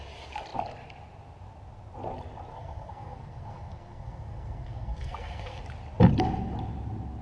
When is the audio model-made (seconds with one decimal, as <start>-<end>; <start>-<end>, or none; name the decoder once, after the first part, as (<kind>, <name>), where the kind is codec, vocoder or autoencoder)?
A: 2.5-5.6 (codec, SNAC)